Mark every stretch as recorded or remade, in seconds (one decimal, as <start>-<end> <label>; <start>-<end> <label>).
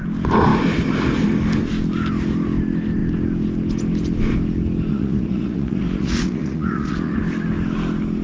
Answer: 0.0-4.9 recorded; 4.9-7.2 remade; 7.2-8.2 recorded